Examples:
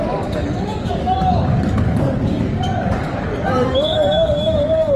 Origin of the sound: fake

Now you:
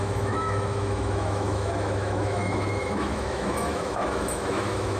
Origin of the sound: fake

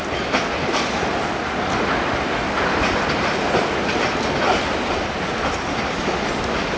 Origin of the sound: real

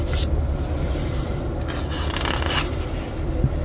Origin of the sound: real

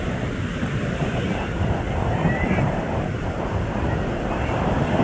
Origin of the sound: fake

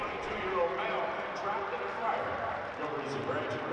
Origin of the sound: real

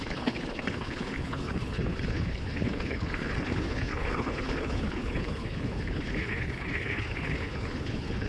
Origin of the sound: fake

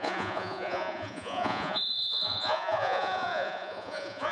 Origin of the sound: fake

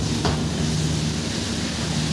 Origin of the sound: real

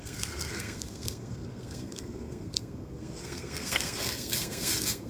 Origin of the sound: fake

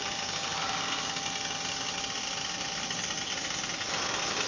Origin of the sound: real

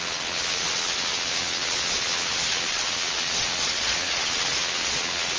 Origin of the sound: fake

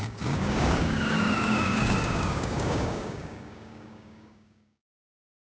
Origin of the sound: fake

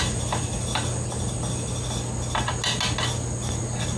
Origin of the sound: real